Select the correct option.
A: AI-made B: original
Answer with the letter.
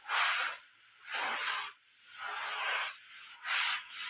B